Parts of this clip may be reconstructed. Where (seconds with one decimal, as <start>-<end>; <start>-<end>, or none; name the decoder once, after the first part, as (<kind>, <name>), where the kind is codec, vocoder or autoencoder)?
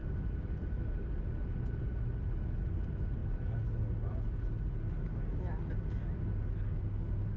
none